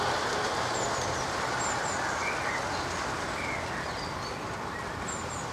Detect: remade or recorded recorded